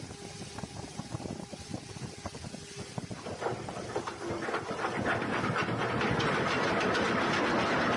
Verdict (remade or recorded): recorded